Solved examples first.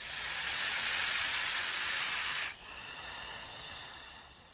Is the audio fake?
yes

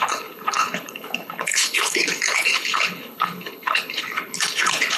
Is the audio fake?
yes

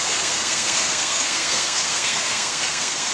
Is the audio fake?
yes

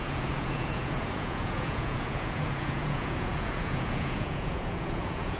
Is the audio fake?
yes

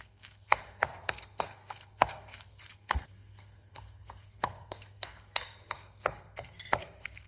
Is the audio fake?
yes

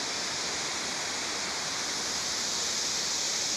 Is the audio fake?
no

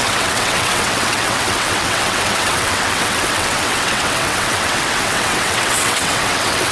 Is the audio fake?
yes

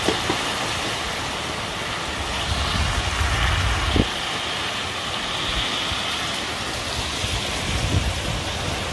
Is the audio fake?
no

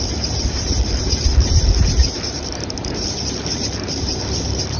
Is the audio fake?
yes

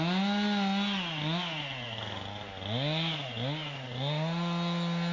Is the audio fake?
no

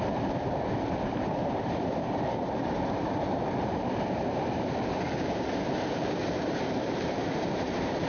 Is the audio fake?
yes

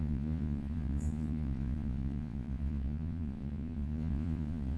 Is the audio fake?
yes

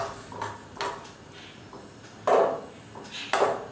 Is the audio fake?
no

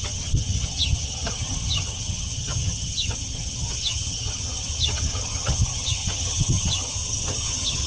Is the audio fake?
yes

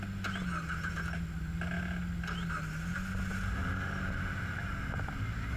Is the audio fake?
no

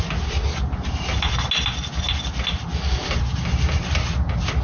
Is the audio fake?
no